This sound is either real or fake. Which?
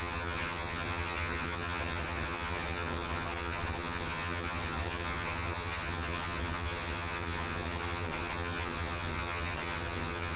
fake